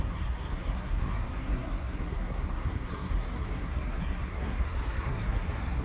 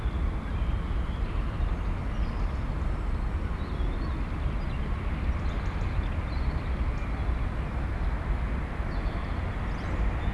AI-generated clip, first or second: first